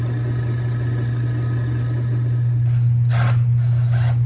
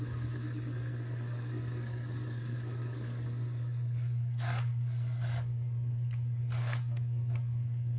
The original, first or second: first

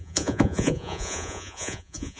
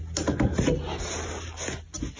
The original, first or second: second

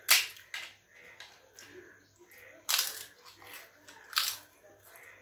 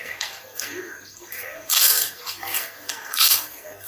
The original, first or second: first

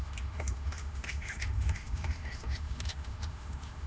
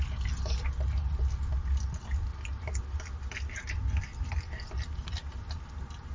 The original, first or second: second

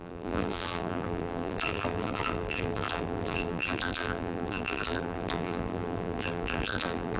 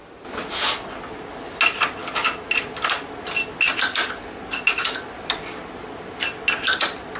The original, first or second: second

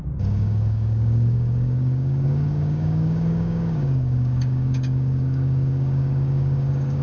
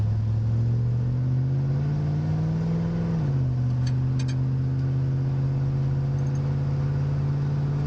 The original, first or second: second